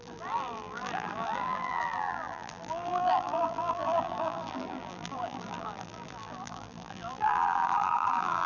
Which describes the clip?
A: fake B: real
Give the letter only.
A